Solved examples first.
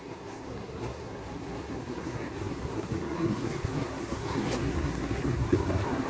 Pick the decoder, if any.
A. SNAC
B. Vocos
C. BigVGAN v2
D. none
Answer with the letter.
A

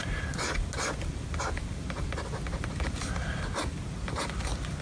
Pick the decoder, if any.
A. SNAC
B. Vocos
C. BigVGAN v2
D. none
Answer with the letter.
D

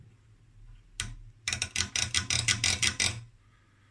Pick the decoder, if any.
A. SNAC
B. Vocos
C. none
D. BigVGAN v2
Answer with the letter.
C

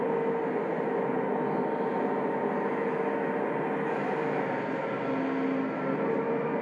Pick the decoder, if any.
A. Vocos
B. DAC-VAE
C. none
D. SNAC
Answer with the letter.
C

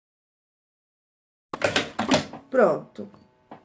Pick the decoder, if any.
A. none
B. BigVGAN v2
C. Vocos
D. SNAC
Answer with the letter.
A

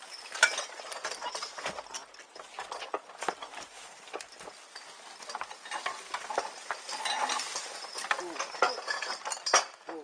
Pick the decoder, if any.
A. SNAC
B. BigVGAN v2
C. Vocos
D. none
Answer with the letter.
D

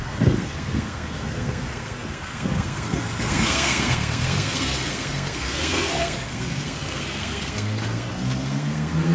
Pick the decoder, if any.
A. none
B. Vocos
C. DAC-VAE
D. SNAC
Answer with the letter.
D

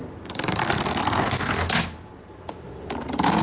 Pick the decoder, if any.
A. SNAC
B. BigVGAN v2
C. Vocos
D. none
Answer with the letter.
D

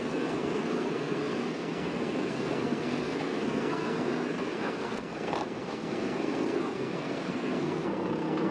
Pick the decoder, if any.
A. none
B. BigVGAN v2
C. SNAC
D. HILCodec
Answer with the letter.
C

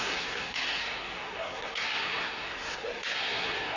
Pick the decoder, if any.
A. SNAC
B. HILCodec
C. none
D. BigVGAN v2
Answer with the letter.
A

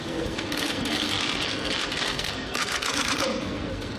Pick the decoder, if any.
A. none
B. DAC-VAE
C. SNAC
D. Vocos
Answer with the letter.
C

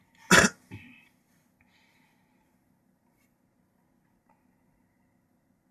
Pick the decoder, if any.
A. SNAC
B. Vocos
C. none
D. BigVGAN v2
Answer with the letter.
C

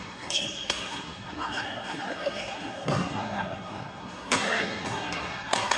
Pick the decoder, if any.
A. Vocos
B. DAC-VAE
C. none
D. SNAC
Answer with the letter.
D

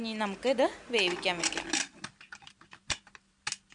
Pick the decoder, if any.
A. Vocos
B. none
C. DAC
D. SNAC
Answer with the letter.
B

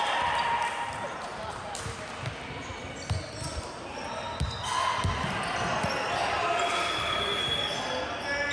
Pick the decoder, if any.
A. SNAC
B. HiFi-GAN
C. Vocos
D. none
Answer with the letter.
D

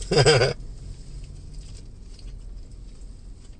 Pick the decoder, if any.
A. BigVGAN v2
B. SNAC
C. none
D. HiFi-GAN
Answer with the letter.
C